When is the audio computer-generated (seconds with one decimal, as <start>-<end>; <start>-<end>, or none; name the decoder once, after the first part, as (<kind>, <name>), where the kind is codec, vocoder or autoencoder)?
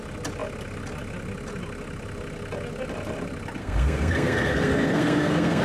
3.6-5.6 (codec, SNAC)